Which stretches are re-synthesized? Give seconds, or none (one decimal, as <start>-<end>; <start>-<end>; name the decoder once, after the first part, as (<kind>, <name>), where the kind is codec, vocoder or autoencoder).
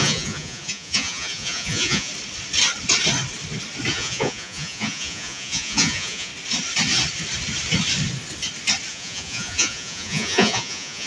0.0-2.1 (vocoder, Vocos); 3.9-6.3; 8.9-11.1